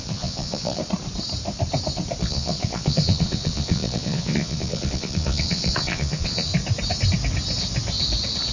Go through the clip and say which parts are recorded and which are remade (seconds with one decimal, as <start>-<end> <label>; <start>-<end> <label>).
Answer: 0.0-0.8 remade; 0.8-2.2 recorded; 2.2-6.5 remade; 6.5-8.5 recorded